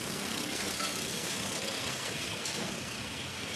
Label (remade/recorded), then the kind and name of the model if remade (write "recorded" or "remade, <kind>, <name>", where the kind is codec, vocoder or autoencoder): remade, codec, SNAC